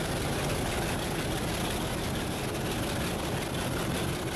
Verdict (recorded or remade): recorded